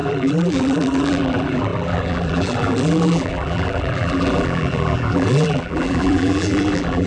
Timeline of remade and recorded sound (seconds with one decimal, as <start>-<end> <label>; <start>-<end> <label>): 0.0-7.1 remade